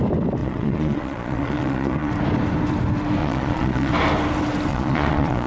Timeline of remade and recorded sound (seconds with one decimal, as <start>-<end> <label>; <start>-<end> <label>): 0.0-0.4 recorded; 0.4-2.1 remade; 2.1-3.2 recorded; 3.2-3.9 remade; 3.9-4.7 recorded; 4.7-5.5 remade